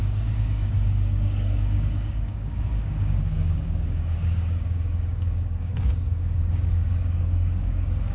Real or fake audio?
fake